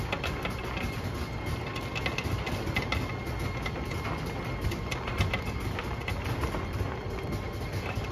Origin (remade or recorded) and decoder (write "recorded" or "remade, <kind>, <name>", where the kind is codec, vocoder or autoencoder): recorded